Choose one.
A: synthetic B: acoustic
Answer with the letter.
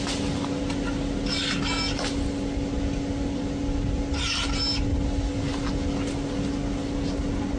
B